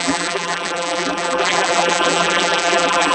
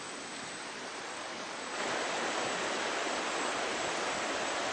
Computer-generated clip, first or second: first